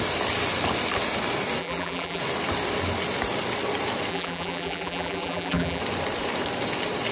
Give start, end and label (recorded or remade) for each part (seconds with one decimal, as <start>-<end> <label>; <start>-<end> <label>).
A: 0.0-1.6 recorded; 1.6-2.2 remade; 2.2-4.1 recorded; 4.1-5.8 remade; 5.8-7.1 recorded